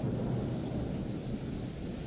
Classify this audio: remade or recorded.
recorded